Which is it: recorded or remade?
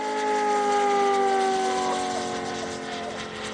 recorded